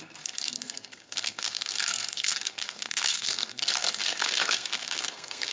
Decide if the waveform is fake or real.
fake